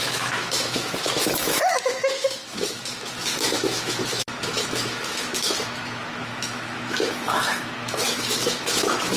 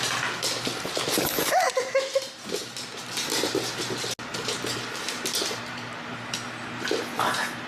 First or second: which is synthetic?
first